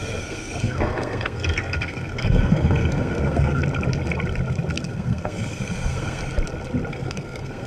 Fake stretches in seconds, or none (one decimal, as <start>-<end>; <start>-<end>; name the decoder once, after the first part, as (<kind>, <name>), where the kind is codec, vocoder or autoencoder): 0.0-3.6 (codec, SNAC); 4.7-6.2; 6.9-7.7

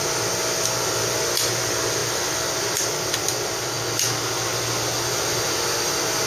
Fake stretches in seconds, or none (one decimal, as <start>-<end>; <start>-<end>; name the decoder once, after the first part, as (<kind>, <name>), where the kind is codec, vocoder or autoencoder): none

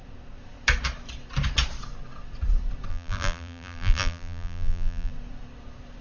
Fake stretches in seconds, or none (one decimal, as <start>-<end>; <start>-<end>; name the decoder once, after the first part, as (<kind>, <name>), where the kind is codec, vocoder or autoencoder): 2.9-5.1 (vocoder, BigVGAN v2)